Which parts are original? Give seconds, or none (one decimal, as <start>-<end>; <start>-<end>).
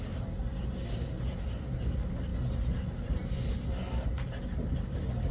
0.0-5.3